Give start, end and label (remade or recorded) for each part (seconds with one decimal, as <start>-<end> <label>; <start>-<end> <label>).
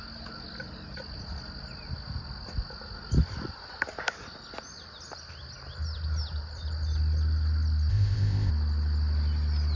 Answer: 0.0-7.9 recorded; 7.9-8.5 remade; 8.5-9.8 recorded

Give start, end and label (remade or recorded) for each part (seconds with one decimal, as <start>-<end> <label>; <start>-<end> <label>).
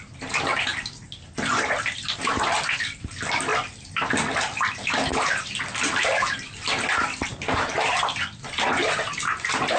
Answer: 0.0-9.8 recorded